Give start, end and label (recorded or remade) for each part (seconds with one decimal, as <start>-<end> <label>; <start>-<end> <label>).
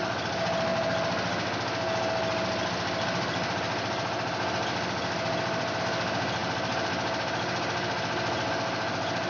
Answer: 0.0-9.3 recorded